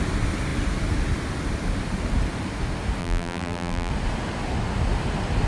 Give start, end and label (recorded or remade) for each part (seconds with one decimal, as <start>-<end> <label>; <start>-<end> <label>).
0.0-3.0 recorded; 3.0-3.9 remade; 3.9-5.5 recorded